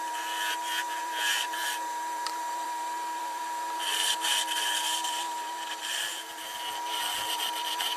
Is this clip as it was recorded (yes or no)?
no